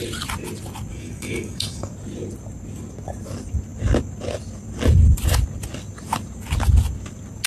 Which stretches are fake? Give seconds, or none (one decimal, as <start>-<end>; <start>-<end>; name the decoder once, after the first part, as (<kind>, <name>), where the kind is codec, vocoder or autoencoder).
0.9-1.9 (codec, DAC)